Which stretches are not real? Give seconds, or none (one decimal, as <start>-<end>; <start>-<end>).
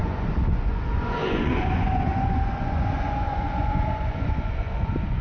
0.0-5.2